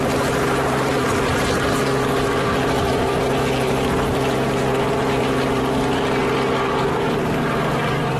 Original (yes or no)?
no